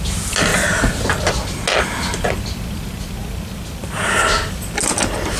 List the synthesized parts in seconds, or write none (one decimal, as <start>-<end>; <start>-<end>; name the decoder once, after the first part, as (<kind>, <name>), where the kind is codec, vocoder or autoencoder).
none